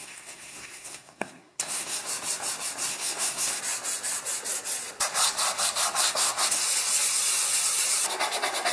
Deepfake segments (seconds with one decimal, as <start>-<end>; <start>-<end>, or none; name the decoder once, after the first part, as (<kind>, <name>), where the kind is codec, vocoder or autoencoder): 0.0-2.1 (codec, SNAC); 2.9-3.6; 6.0-6.6